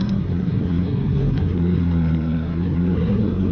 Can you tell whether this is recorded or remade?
remade